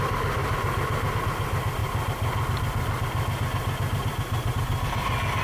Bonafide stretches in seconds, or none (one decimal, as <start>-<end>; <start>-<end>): 0.0-5.4